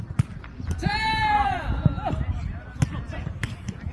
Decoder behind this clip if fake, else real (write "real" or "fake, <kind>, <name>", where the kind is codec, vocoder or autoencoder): real